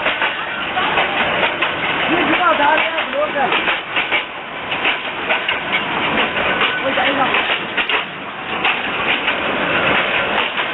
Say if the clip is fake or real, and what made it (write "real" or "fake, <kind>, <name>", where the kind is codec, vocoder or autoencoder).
real